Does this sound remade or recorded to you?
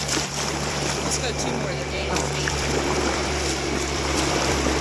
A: remade